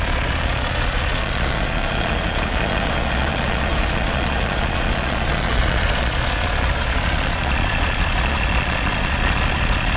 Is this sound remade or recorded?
remade